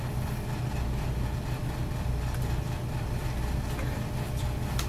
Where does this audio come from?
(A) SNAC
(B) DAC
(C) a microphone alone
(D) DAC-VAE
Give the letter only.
C